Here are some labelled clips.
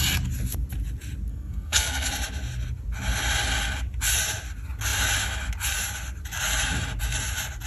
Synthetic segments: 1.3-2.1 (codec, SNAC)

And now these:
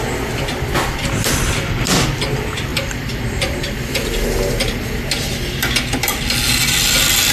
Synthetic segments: 2.7-5.0 (vocoder, BigVGAN v2)

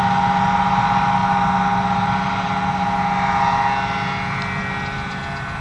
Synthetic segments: none

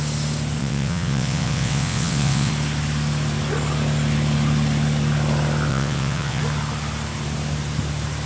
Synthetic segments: 0.6-2.5 (vocoder, WaveNeXt); 5.7-6.4

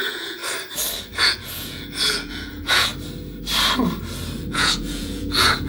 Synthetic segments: 0.0-0.4 (vocoder, Vocos); 1.0-2.9; 4.4-5.7

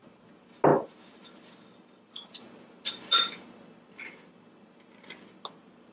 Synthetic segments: none